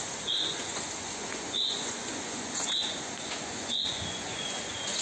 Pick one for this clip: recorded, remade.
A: remade